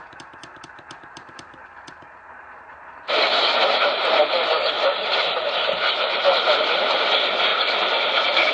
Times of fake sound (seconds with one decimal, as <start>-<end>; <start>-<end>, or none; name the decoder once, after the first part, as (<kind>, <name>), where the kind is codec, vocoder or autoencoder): 0.0-7.5 (vocoder, BigVGAN v2)